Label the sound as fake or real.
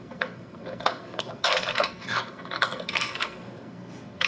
fake